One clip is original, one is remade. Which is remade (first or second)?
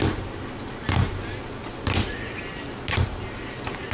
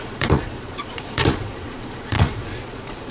second